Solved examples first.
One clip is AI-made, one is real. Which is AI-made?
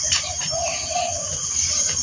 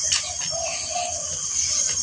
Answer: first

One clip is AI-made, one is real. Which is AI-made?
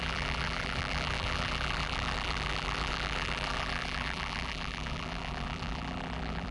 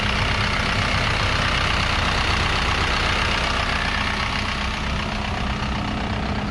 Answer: first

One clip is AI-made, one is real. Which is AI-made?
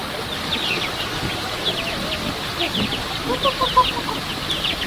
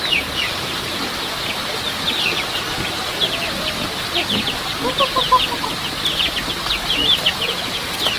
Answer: first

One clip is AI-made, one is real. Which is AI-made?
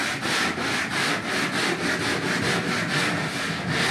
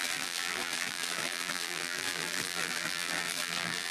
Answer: second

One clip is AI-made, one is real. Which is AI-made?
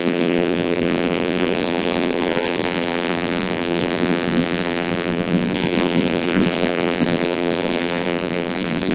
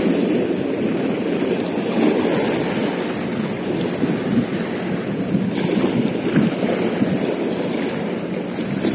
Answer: first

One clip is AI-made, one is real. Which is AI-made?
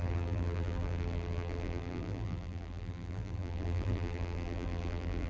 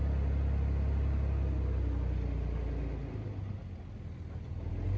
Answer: first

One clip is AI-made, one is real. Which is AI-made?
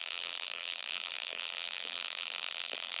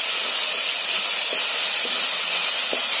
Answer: first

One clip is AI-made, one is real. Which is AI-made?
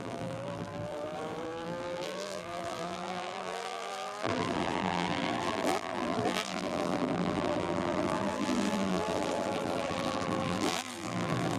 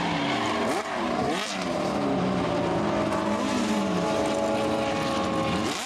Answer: first